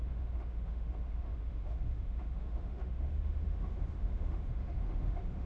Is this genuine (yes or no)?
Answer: no